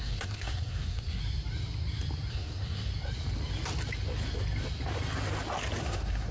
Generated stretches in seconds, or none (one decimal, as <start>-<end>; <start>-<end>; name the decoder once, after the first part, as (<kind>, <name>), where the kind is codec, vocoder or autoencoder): 0.0-1.2 (codec, SNAC); 2.3-2.9; 5.8-6.3